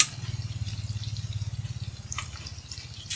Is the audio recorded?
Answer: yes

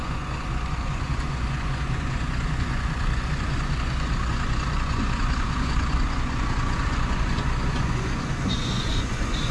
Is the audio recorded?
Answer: no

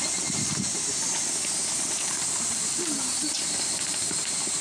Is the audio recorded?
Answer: yes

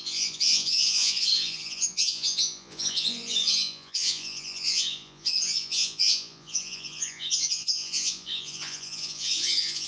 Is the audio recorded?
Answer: no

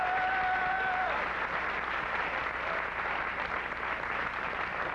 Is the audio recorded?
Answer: yes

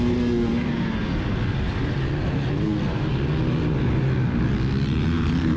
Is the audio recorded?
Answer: yes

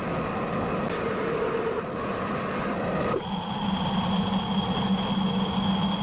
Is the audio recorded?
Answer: yes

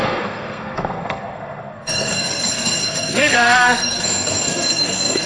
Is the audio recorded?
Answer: no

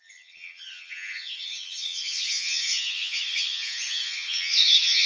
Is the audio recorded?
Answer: no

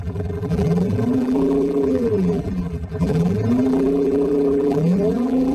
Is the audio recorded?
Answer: no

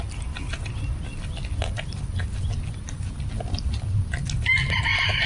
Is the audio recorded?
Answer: yes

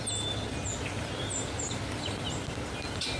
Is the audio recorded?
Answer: yes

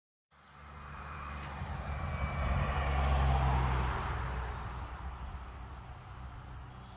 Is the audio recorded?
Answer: yes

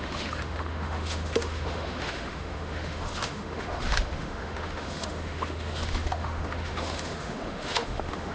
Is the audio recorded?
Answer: no